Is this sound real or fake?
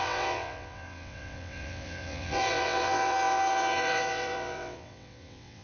fake